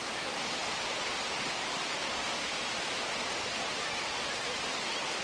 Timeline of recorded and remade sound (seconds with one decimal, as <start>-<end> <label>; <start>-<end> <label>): 0.0-5.2 recorded

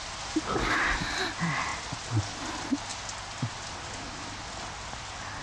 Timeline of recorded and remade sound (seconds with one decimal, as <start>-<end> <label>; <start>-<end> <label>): 0.0-5.4 recorded

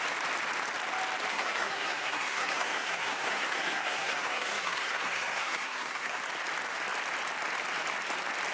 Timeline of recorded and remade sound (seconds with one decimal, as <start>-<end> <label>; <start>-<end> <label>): 0.0-1.3 recorded; 1.3-6.2 remade; 6.2-8.5 recorded